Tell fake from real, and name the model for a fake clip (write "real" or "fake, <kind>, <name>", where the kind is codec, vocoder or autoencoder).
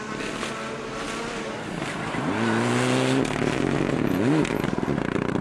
real